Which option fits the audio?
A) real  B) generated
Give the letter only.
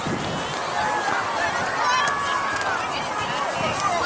A